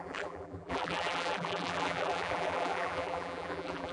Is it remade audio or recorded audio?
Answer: remade